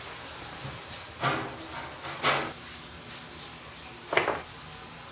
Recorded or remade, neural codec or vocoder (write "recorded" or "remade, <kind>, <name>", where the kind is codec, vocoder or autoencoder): recorded